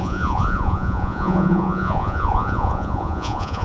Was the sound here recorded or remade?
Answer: remade